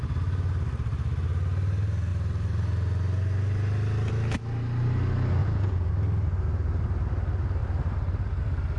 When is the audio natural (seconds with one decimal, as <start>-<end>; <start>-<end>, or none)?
0.0-5.4; 5.9-8.8